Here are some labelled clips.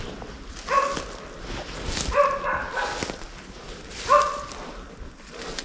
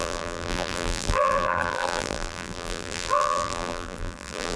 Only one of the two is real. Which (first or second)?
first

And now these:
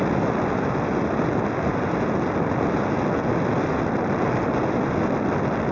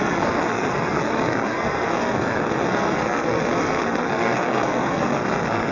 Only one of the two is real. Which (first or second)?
first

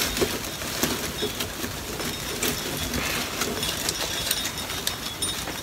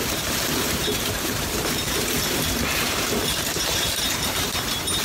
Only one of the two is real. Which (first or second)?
first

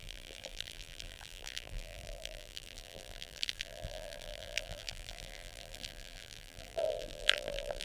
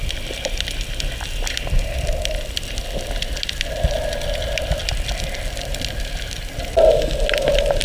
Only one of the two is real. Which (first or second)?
second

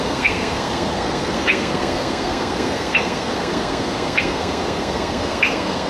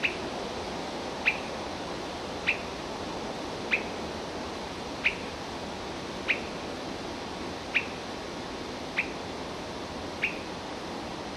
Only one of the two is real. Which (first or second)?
second